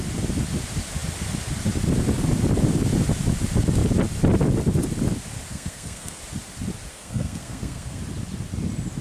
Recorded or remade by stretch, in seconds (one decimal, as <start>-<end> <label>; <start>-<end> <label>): 0.0-5.5 recorded; 5.5-6.2 remade; 6.2-6.9 recorded; 6.9-8.0 remade; 8.0-9.0 recorded

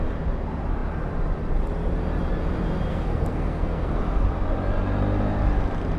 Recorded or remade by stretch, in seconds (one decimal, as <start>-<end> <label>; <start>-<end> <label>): 0.0-2.9 recorded; 2.9-4.0 remade; 4.0-6.0 recorded

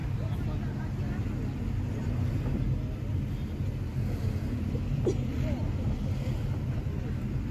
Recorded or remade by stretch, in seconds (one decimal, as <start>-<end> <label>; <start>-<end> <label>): 0.0-7.5 recorded